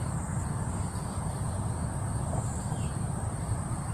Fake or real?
fake